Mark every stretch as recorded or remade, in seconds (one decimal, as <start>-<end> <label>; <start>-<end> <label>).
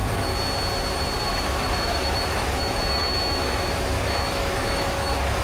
0.0-1.3 recorded; 1.3-5.4 remade